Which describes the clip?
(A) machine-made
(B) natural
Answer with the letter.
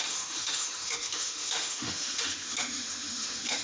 A